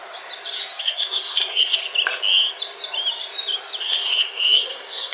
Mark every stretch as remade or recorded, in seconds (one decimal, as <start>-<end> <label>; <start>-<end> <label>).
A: 0.0-0.8 recorded; 0.8-1.8 remade; 1.8-3.8 recorded; 3.8-5.1 remade